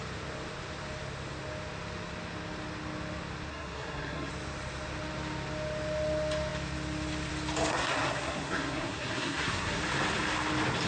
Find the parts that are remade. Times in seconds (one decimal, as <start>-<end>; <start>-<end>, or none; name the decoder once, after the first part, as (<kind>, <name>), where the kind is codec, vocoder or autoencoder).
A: 3.5-4.3 (codec, SNAC); 7.7-9.8

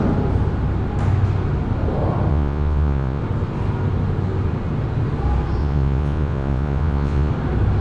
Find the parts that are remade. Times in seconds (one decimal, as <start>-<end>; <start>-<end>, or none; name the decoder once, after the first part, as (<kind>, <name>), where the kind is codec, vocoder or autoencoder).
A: 2.3-3.2 (vocoder, Vocos); 5.6-7.3

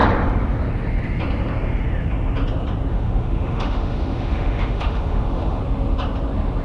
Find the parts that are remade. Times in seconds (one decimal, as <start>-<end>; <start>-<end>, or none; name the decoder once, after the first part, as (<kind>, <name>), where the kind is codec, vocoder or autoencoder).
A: 2.9-5.6 (autoencoder, DAC-VAE)

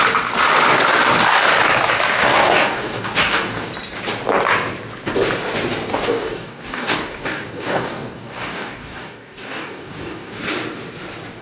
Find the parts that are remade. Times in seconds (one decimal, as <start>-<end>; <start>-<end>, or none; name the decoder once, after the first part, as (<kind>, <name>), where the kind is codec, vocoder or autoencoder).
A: 2.1-3.7 (codec, DAC); 5.9-10.4

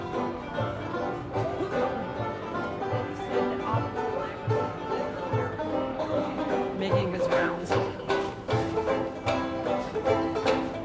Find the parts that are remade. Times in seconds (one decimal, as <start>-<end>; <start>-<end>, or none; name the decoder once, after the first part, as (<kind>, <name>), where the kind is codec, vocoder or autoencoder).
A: 5.9-6.4 (codec, HILCodec); 7.0-8.1

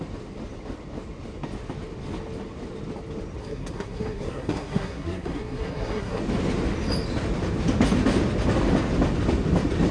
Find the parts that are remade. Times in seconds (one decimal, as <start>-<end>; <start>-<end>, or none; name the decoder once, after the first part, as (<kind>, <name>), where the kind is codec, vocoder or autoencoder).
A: 3.4-6.2 (codec, SNAC)

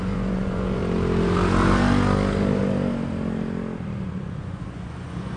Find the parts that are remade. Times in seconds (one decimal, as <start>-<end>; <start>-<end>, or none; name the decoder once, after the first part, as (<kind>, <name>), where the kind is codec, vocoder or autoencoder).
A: 0.0-0.8 (vocoder, Vocos); 4.0-5.4